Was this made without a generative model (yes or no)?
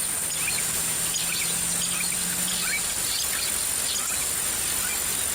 yes